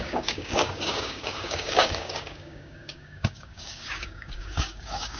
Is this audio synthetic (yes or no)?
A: yes